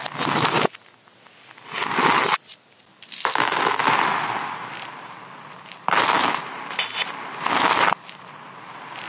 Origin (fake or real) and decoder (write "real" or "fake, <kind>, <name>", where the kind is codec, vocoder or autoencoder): real